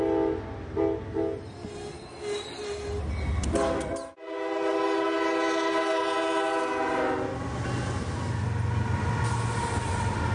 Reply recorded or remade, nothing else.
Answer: recorded